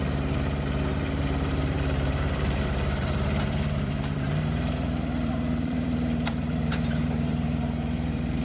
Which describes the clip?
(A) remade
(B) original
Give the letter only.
A